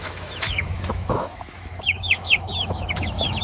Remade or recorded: remade